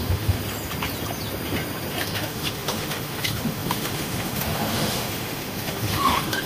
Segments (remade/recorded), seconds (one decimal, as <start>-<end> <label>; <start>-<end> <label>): 0.0-0.4 remade; 0.4-2.0 recorded; 2.0-6.5 remade